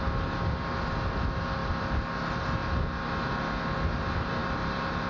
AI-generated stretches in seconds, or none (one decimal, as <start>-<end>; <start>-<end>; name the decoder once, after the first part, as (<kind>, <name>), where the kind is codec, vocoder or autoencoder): none